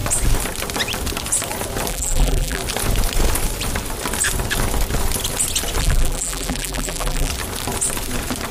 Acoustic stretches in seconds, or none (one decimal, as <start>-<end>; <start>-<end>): 0.0-1.9; 2.6-5.8; 7.3-8.5